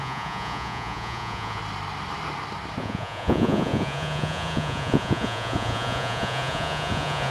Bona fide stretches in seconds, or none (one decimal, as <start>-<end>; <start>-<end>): 1.6-2.8